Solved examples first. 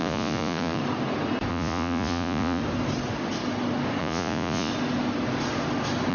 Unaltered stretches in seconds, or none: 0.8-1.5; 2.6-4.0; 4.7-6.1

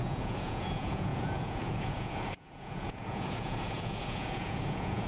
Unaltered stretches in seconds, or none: none

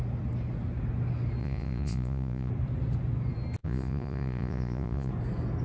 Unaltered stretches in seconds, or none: 0.0-1.4; 2.5-3.6; 5.1-5.6

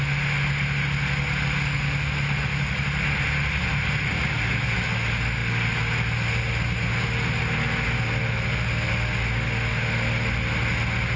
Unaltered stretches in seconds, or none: 0.0-11.2

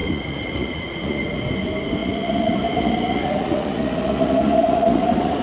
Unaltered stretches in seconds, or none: 1.4-2.0

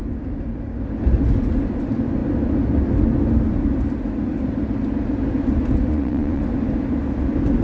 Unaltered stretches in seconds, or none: 0.0-5.9; 6.4-7.6